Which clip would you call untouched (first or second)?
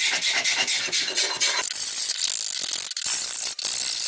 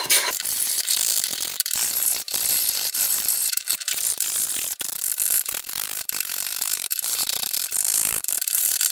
first